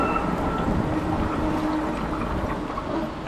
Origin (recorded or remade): recorded